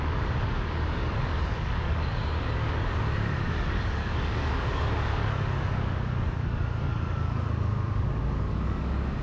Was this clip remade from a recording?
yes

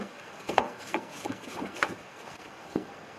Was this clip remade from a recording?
yes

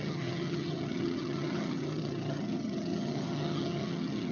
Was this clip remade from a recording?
yes